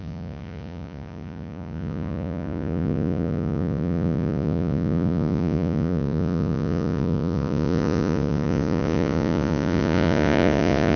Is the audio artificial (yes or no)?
yes